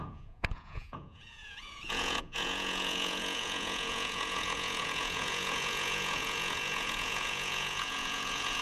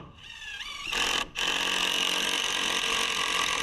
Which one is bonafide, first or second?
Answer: second